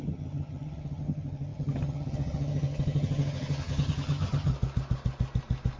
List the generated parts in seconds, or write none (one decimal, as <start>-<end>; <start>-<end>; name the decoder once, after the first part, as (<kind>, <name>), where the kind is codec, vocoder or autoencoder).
0.0-4.5 (vocoder, HiFi-GAN)